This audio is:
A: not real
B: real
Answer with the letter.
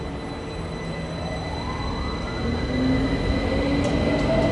B